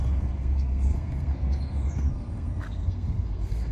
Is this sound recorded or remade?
remade